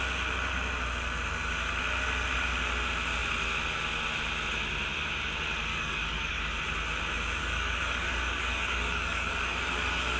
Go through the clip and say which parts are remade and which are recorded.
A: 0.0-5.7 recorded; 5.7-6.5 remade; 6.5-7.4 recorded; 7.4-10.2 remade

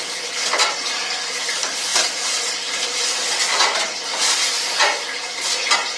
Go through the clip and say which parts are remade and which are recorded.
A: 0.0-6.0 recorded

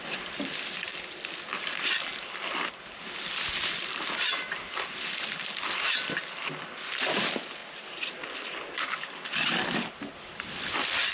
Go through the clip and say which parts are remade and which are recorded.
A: 0.0-7.6 remade; 7.6-8.1 recorded; 8.1-11.1 remade